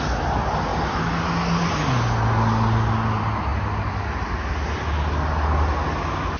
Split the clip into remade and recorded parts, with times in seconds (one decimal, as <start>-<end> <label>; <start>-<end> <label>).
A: 0.0-6.4 recorded